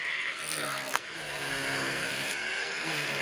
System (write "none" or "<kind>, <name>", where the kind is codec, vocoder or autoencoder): codec, SNAC